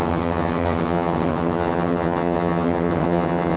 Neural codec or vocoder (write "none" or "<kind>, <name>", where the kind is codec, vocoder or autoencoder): vocoder, HiFi-GAN